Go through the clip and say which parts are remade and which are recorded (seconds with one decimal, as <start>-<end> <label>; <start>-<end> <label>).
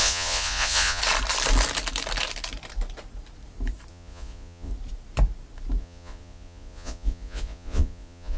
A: 0.0-1.0 remade; 1.0-3.9 recorded; 3.9-4.7 remade; 4.7-5.8 recorded; 5.8-8.4 remade